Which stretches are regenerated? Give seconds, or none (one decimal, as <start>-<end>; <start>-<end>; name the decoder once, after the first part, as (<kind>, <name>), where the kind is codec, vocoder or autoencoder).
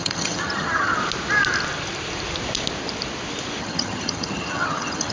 0.0-1.0 (vocoder, HiFi-GAN); 3.6-5.1